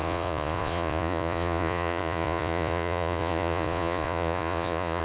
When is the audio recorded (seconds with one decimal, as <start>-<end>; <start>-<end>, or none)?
none